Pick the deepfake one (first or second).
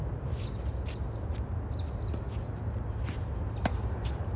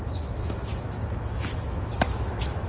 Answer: second